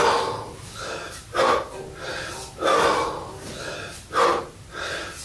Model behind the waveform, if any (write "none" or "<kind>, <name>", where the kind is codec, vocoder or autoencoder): none